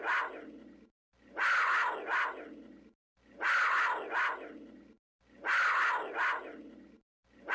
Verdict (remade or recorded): recorded